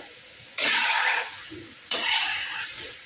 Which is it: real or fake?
fake